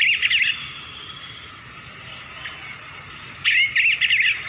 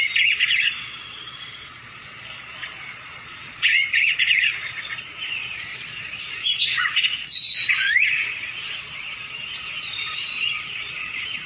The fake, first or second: second